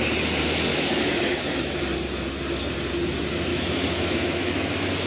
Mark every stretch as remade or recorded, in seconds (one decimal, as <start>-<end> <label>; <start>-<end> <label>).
0.0-0.7 recorded; 0.7-1.8 remade; 1.8-3.5 recorded; 3.5-5.1 remade